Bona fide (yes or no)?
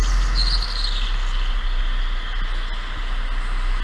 yes